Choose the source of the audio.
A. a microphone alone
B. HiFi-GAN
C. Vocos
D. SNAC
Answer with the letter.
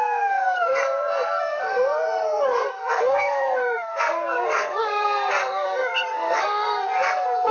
D